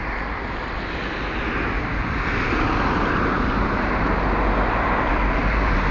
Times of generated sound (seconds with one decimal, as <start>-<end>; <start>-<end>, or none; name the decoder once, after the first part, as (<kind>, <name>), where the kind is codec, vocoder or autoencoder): 3.3-4.2 (vocoder, BigVGAN v2); 5.1-5.9